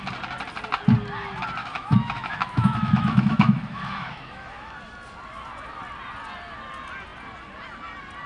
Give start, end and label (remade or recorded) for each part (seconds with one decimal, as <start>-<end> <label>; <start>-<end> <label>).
0.0-1.6 recorded; 1.6-4.7 remade; 4.7-8.3 recorded

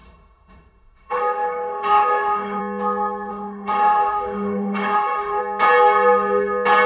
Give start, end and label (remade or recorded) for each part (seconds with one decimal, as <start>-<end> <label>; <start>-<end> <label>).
0.0-2.6 remade; 2.6-3.3 recorded; 3.3-5.4 remade; 5.4-6.9 recorded